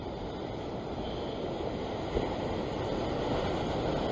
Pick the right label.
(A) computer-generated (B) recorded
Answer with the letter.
B